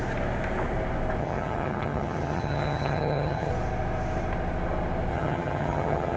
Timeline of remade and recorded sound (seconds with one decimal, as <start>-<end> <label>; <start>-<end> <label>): 0.0-1.2 recorded; 1.2-3.5 remade; 3.5-5.1 recorded; 5.1-6.2 remade